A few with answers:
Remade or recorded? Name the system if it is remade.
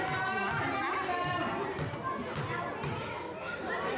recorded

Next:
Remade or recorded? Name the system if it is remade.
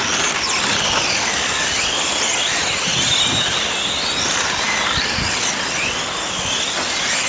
recorded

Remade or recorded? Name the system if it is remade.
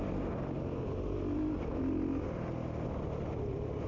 recorded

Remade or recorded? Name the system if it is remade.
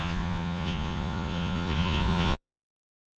remade, vocoder, Vocos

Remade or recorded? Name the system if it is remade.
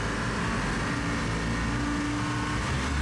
recorded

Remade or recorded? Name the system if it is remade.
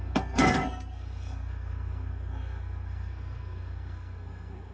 remade, codec, SNAC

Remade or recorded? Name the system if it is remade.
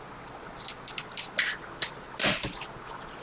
recorded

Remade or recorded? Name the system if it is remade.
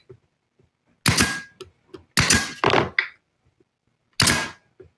recorded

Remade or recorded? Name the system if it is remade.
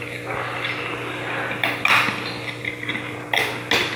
recorded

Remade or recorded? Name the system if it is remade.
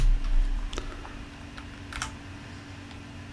recorded